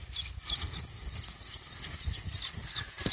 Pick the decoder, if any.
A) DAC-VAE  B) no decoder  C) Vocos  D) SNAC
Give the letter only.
B